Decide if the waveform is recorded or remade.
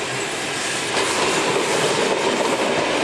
recorded